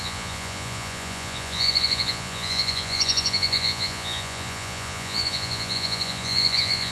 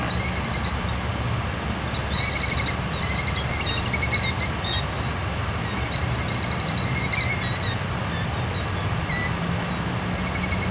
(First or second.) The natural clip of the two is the second